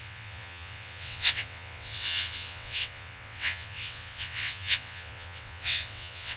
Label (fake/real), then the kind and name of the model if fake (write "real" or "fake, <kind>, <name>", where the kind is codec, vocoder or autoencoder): fake, vocoder, WaveNeXt